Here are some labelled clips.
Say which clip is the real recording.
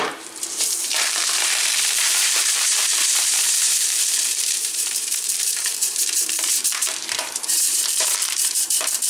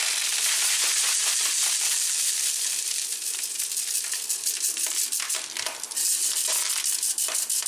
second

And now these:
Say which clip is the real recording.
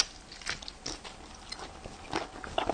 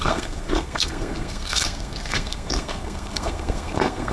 first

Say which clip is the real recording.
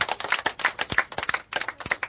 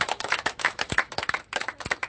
first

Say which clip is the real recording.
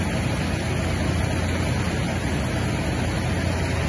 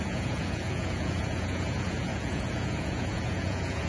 first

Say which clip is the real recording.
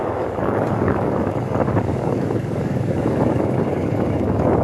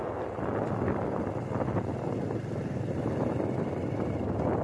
second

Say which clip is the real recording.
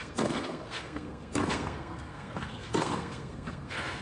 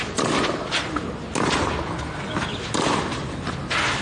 second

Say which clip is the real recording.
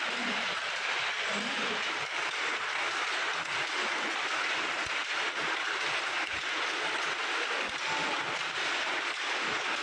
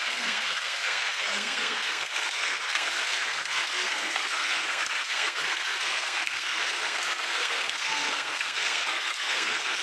first